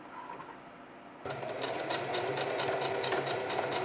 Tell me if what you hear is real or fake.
real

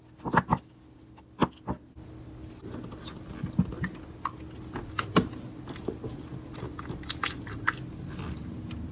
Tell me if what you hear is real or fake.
real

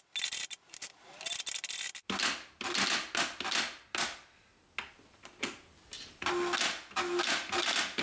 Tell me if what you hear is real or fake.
real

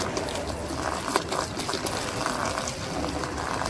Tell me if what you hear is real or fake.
real